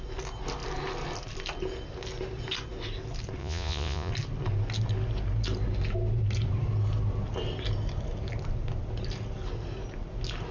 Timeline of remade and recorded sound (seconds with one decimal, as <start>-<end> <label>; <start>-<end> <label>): 0.0-3.4 recorded; 3.4-4.1 remade; 4.1-10.5 recorded